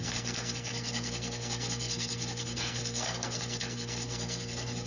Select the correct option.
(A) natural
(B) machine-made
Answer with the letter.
B